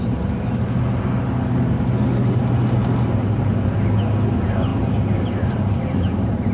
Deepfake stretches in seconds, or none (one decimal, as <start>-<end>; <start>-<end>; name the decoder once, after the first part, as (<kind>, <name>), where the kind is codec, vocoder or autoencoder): none